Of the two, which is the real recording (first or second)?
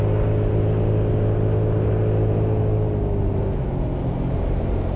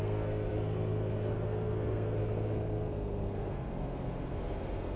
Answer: first